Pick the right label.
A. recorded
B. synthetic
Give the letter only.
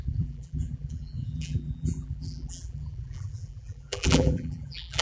B